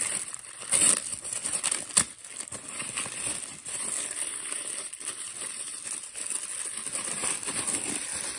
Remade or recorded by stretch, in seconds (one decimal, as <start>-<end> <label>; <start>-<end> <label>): 0.0-8.4 remade